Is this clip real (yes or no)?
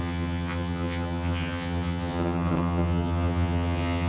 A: no